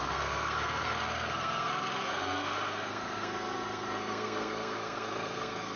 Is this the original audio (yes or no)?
no